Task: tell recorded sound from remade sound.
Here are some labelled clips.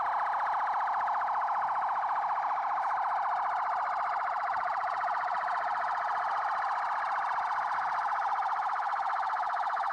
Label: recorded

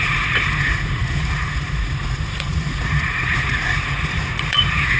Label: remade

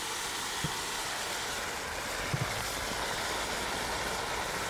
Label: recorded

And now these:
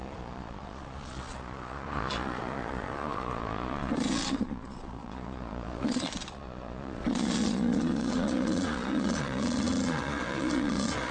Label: remade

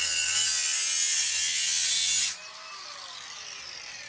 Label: recorded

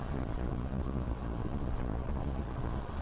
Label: remade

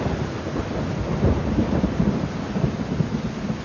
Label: recorded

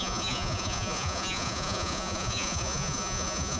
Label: remade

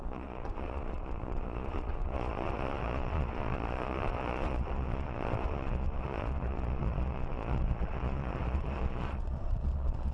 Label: remade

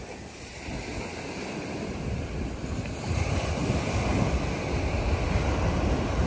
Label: recorded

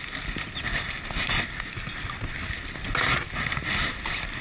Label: recorded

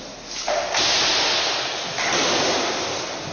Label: recorded